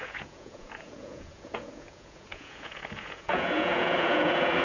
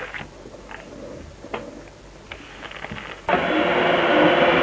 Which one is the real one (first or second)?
second